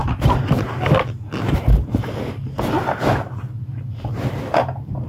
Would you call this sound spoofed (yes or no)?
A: no